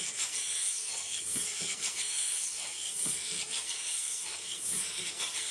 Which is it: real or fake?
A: fake